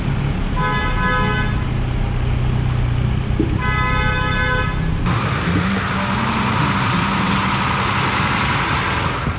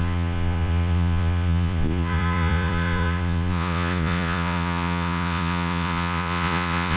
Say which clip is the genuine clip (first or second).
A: first